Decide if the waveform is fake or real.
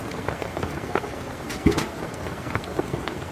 fake